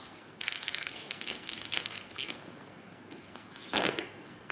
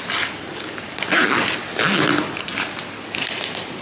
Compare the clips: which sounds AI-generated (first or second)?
first